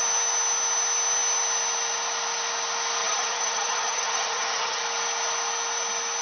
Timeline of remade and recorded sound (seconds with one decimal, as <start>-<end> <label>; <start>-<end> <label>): 0.0-3.0 recorded; 3.0-4.8 remade; 4.8-6.2 recorded